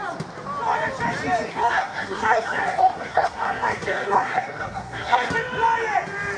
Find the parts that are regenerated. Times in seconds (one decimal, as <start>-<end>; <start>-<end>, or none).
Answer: 1.5-5.3